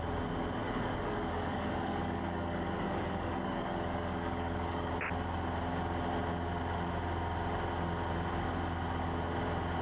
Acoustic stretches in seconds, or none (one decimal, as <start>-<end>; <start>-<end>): 0.0-0.6; 4.9-9.8